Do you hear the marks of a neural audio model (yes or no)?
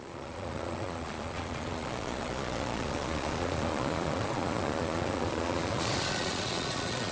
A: yes